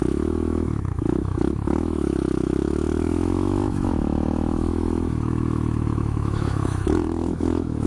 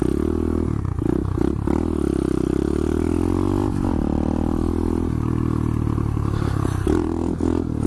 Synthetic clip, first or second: first